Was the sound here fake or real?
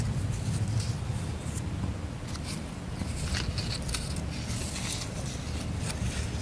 real